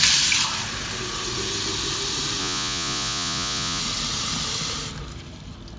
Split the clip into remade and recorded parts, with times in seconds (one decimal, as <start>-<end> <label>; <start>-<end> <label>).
0.0-2.4 recorded; 2.4-3.8 remade; 3.8-5.8 recorded